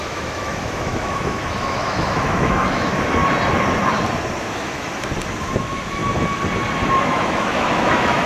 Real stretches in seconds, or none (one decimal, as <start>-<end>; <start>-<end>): 3.2-4.4; 4.9-5.4; 6.0-6.9